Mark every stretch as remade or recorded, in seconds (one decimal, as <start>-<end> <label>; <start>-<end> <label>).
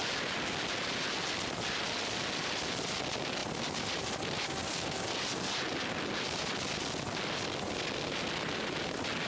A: 0.0-3.4 recorded; 3.4-4.1 remade; 4.1-9.3 recorded